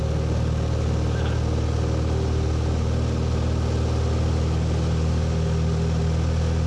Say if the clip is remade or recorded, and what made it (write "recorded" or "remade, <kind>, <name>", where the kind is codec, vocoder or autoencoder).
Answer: recorded